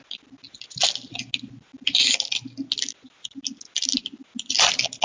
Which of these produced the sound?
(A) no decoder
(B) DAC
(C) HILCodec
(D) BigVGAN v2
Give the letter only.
A